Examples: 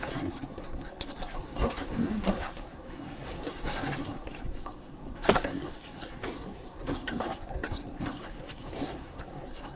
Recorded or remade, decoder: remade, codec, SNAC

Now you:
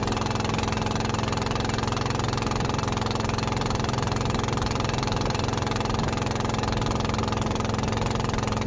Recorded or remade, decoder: recorded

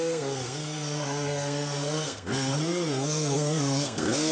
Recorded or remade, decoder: remade, codec, SNAC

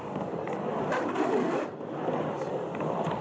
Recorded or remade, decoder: recorded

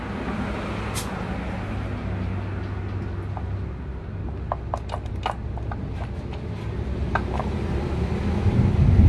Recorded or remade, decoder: recorded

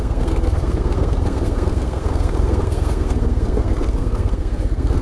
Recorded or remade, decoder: remade, codec, SNAC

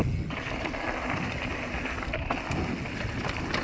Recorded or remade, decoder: recorded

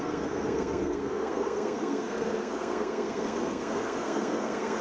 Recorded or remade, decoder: remade, codec, SNAC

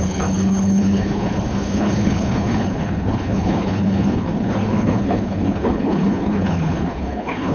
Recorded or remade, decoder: remade, codec, HILCodec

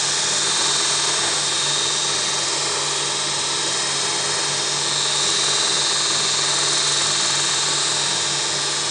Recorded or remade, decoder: recorded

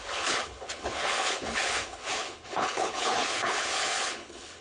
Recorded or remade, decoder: remade, codec, HILCodec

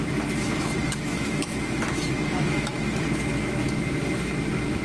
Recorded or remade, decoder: remade, autoencoder, DAC-VAE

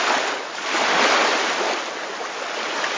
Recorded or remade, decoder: recorded